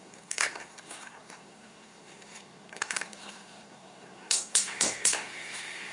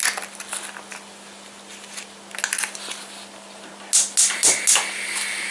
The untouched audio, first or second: second